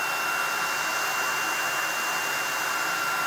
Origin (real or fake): real